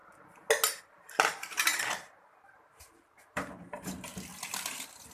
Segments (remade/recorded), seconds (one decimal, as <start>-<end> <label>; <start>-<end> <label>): 0.0-0.8 recorded; 0.8-4.1 remade; 4.1-5.1 recorded